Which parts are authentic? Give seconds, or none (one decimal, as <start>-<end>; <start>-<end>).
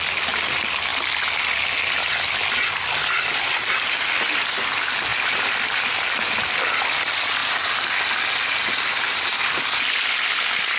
0.0-10.8